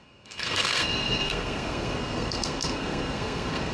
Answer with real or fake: fake